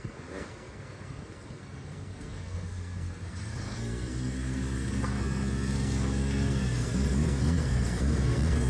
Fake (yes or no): yes